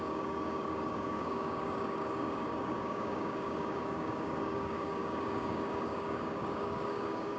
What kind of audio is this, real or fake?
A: fake